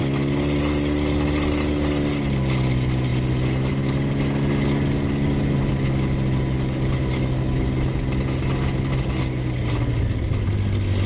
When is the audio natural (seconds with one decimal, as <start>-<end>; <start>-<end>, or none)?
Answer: 0.0-11.1